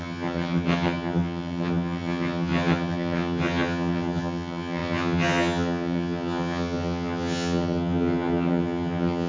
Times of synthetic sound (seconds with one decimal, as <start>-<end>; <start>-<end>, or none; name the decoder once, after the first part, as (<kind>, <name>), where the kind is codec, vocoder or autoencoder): 0.0-9.3 (vocoder, HiFi-GAN)